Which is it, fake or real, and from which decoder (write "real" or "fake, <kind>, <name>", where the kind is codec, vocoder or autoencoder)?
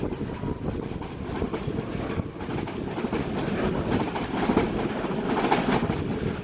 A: real